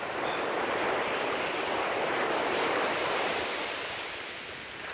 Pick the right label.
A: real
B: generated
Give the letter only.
A